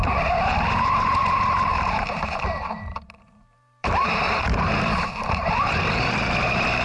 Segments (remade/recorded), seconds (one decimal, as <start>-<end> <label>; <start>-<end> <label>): 0.0-6.8 remade

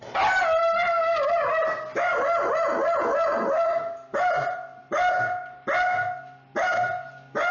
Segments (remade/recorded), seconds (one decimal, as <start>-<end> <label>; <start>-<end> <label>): 0.0-7.5 recorded

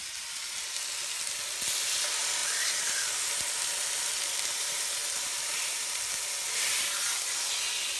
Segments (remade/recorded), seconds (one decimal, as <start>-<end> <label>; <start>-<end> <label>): 0.0-2.4 recorded; 2.4-6.5 remade; 6.5-8.0 recorded

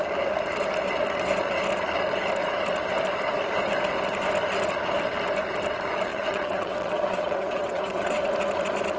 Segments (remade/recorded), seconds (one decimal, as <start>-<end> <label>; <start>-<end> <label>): 0.0-6.1 recorded; 6.1-8.2 remade; 8.2-9.0 recorded

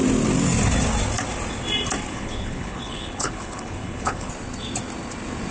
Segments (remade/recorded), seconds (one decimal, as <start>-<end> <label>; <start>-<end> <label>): 0.0-2.1 recorded; 2.1-4.3 remade; 4.3-5.5 recorded